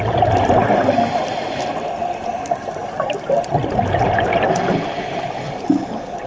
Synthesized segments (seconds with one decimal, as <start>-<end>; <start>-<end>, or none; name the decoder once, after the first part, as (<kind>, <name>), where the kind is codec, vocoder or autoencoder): none